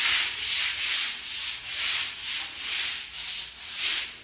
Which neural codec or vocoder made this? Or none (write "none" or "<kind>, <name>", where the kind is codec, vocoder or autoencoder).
none